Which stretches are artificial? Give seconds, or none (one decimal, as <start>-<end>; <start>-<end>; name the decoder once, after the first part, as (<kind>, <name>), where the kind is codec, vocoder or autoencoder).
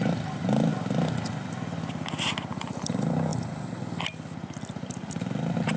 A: none